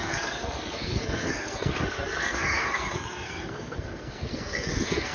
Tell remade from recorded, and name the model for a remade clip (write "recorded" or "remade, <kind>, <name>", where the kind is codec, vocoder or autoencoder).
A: remade, codec, SNAC